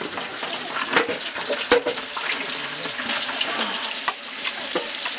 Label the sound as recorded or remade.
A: recorded